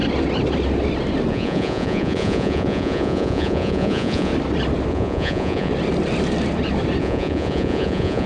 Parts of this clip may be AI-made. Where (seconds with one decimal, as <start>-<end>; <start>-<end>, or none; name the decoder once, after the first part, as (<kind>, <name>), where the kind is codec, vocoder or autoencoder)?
1.3-4.3 (vocoder, Vocos); 4.9-5.7; 7.0-8.3